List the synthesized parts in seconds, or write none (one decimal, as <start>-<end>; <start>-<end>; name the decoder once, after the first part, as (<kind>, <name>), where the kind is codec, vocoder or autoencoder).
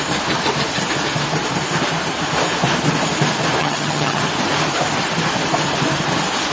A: 3.6-4.2 (vocoder, HiFi-GAN)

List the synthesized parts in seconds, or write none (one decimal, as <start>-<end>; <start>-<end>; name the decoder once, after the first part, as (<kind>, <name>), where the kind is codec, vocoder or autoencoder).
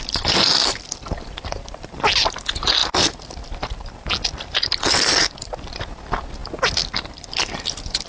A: none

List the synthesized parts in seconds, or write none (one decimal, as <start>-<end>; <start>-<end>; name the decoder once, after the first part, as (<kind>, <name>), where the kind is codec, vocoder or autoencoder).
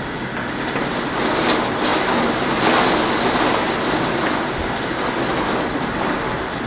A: none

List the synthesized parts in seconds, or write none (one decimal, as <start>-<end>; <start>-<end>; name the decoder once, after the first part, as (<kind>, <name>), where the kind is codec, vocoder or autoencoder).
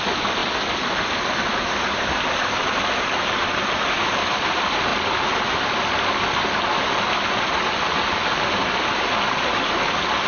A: none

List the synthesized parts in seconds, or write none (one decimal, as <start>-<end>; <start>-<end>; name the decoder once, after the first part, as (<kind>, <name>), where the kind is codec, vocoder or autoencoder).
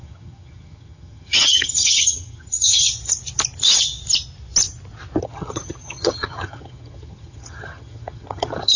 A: 0.0-2.8 (vocoder, HiFi-GAN); 5.2-8.8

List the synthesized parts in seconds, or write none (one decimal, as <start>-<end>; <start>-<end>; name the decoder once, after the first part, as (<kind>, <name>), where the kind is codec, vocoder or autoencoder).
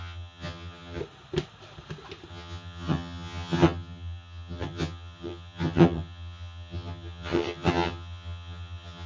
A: 0.0-1.0 (vocoder, HiFi-GAN); 2.3-9.1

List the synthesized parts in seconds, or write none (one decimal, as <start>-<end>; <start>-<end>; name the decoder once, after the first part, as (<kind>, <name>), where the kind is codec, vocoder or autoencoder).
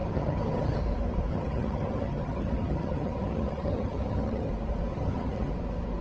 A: 0.0-0.8 (vocoder, HiFi-GAN); 1.3-4.5; 4.9-5.5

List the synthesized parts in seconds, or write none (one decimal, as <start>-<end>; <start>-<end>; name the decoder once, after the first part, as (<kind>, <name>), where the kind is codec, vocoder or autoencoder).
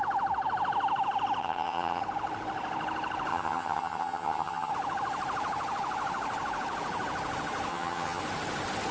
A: 1.4-2.0 (vocoder, HiFi-GAN); 3.3-4.7; 7.7-8.2